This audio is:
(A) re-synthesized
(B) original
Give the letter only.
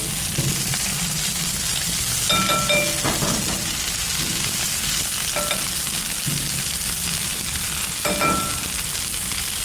B